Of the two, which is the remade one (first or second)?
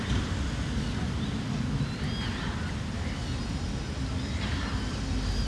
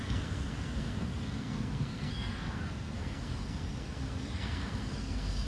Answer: second